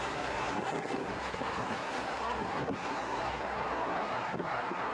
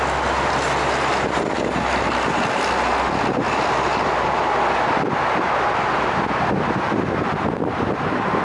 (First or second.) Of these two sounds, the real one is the second